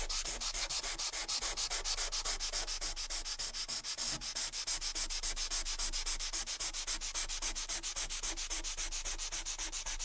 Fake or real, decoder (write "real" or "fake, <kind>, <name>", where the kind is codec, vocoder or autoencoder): real